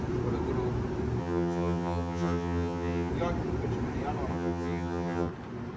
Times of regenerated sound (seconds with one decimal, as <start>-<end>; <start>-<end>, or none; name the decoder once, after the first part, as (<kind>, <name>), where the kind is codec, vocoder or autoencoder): 1.2-3.1 (vocoder, HiFi-GAN); 4.3-5.3